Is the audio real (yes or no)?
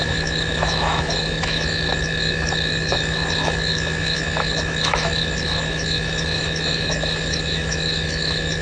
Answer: no